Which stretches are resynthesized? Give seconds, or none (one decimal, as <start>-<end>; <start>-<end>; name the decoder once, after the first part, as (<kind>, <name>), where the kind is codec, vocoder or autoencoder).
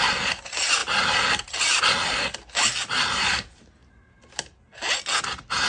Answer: 0.0-3.8 (vocoder, BigVGAN v2); 5.2-5.7